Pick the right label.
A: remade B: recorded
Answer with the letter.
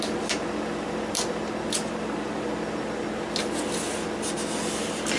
B